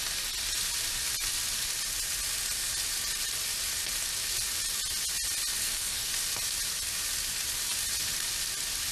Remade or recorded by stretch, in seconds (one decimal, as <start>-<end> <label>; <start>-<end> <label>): 0.0-5.6 recorded; 5.6-6.1 remade; 6.1-8.9 recorded